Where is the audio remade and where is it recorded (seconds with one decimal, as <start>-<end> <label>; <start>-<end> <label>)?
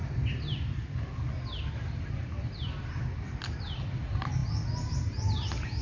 0.0-5.8 recorded